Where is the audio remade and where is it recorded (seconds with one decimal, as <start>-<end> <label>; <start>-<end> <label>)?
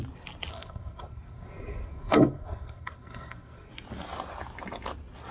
0.0-0.5 recorded; 0.5-3.7 remade; 3.7-5.3 recorded